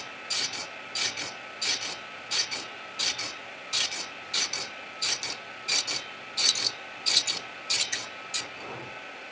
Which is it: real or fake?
real